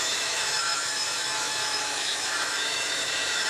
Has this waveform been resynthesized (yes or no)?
yes